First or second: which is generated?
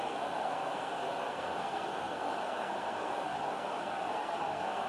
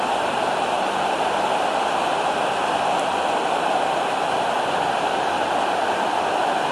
first